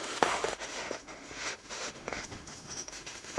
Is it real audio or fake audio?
fake